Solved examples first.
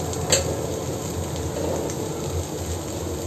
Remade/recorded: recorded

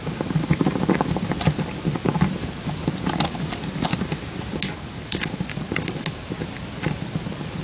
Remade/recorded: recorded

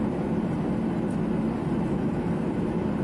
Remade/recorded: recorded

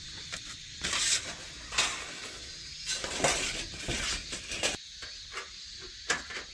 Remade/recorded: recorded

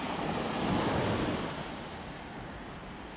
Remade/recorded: recorded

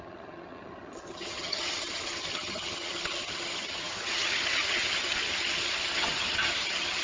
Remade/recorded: remade